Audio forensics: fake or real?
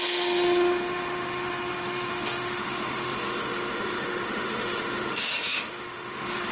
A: fake